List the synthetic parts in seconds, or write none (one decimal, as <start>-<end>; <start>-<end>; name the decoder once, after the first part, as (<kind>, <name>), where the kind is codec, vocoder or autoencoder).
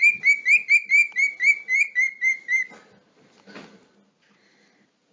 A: none